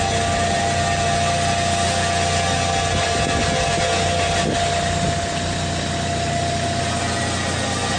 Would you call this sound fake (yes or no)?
no